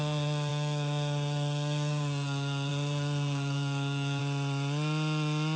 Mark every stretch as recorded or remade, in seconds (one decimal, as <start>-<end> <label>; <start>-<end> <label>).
0.0-4.2 remade; 4.2-5.6 recorded